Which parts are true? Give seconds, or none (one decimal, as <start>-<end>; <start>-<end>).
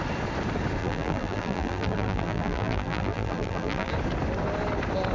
0.0-0.8; 3.9-5.1